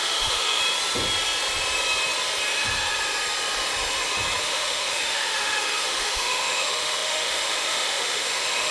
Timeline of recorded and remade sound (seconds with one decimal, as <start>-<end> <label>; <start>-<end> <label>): 0.0-0.6 remade; 0.6-4.4 recorded; 4.4-8.7 remade